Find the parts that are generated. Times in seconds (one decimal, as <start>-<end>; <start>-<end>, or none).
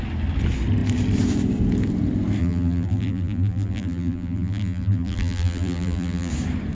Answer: 2.4-6.3